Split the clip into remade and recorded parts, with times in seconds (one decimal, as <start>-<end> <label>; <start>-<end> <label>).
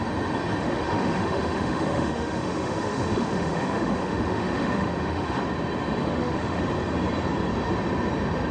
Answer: 0.0-0.6 recorded; 0.6-5.4 remade; 5.4-6.0 recorded; 6.0-6.6 remade; 6.6-8.5 recorded